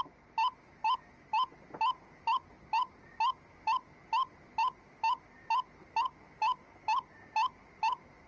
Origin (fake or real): real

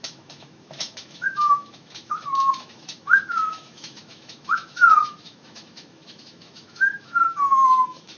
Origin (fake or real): fake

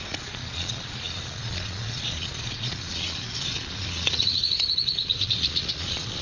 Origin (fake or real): fake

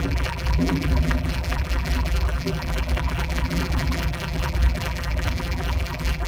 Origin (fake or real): fake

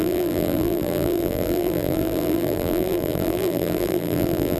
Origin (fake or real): fake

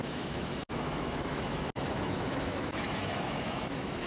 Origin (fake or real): fake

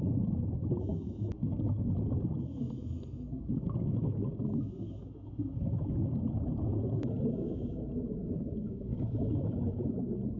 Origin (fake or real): fake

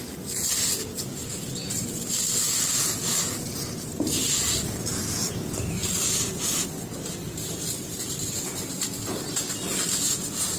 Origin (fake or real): real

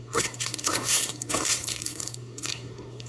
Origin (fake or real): fake